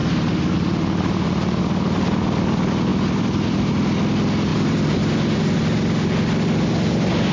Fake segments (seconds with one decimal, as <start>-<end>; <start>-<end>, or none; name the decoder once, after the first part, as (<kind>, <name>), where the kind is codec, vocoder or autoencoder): 0.0-1.6 (vocoder, BigVGAN v2); 2.9-3.7; 4.5-5.6